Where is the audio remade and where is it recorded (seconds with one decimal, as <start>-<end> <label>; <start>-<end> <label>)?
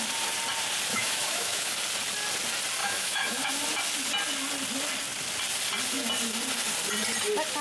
0.0-0.9 recorded; 0.9-1.7 remade; 1.7-2.8 recorded; 2.8-3.5 remade; 3.5-7.6 recorded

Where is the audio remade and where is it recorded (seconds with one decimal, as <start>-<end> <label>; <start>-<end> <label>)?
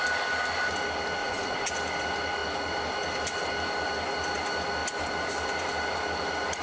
0.0-1.2 recorded; 1.2-1.7 remade; 1.7-6.6 recorded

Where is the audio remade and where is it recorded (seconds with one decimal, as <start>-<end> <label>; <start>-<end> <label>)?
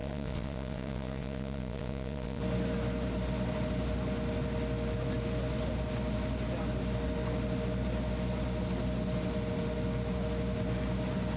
0.0-2.4 remade; 2.4-11.4 recorded